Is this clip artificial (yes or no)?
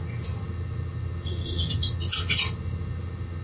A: yes